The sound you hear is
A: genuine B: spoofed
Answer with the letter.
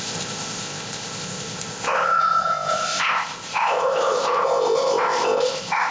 B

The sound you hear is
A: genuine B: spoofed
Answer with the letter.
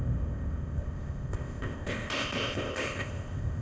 B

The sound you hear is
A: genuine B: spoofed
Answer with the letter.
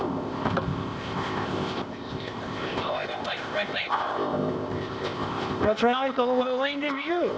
B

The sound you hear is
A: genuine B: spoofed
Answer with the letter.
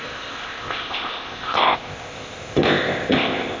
B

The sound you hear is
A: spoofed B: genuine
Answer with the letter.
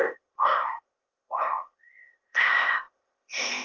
A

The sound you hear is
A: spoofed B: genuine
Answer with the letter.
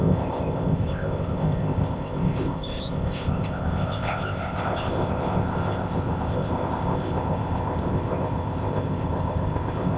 A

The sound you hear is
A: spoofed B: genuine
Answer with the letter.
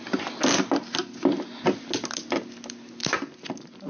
B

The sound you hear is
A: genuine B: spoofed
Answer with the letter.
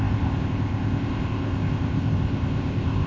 B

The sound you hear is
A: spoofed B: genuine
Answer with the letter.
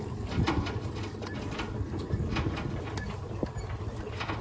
B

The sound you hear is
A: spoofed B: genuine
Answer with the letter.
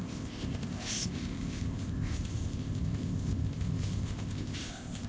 A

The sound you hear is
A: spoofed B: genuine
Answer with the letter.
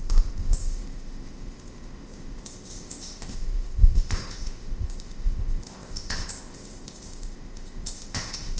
A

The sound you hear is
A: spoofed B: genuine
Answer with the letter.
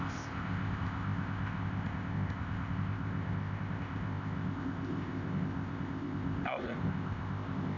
A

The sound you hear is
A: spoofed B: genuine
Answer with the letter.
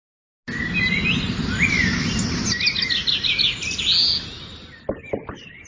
B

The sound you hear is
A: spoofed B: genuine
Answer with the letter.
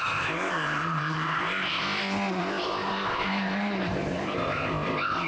A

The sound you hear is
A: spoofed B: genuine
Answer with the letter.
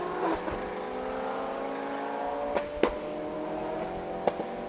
B